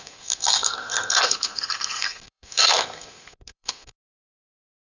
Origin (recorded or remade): remade